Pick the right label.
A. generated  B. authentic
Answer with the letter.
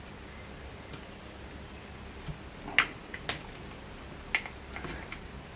B